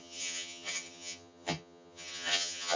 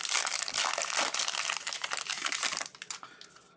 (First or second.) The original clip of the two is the second